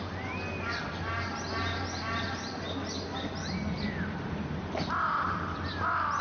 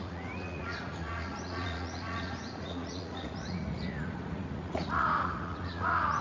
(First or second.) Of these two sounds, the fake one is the second